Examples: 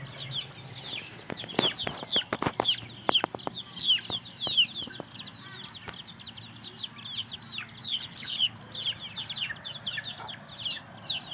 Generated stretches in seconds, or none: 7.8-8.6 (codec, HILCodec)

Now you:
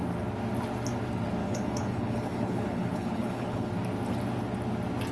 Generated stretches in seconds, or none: 1.4-3.7 (codec, HILCodec)

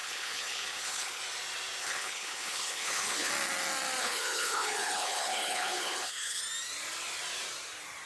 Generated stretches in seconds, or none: 0.0-1.2 (codec, HILCodec); 1.8-3.3; 4.0-6.4

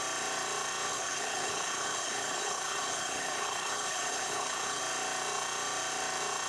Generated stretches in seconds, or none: 0.9-4.8 (codec, HILCodec)

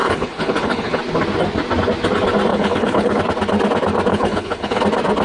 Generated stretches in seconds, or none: 0.0-1.0 (codec, HILCodec); 2.5-3.2; 4.1-4.8

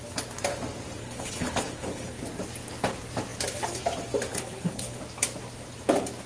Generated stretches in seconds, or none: 1.0-2.2 (codec, HILCodec); 4.3-5.0

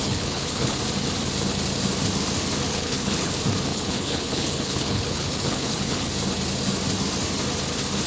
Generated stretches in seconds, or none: 0.0-0.8 (codec, HILCodec); 2.7-3.3; 3.7-6.1